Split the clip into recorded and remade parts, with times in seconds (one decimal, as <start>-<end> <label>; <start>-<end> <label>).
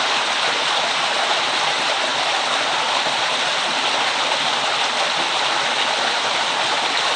0.0-7.2 recorded